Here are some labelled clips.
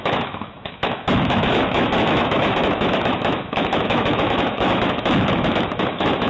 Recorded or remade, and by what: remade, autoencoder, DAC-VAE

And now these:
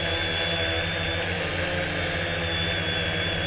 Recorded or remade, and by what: recorded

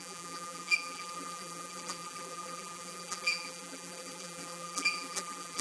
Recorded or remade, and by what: remade, vocoder, BigVGAN v2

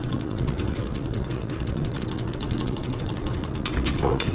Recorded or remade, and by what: remade, vocoder, WaveNeXt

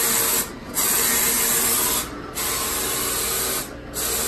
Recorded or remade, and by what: recorded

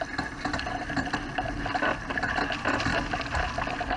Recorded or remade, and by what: recorded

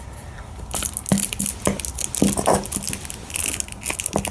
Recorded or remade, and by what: recorded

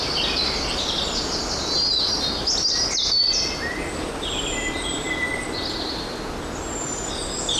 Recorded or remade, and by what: recorded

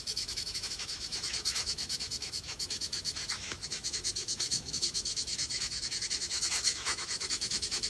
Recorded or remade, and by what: remade, autoencoder, DAC-VAE